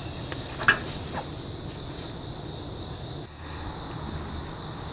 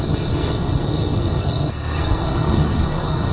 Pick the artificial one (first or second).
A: second